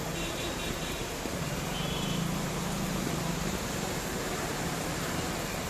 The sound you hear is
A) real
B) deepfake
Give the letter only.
B